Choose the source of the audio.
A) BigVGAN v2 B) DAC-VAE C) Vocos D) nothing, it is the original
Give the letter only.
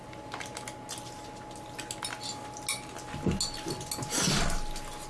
D